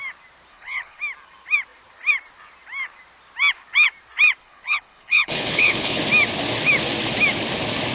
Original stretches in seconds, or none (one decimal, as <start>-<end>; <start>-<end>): 0.0-0.5; 1.0-4.4; 6.0-7.9